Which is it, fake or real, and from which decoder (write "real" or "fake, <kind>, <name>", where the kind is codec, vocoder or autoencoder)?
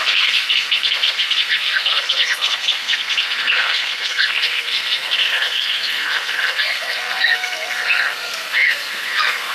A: fake, codec, SNAC